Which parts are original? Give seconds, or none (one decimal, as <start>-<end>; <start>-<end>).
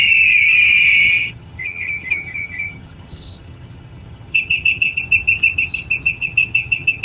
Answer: 0.0-0.8; 5.0-6.1